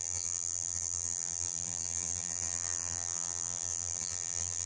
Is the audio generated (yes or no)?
yes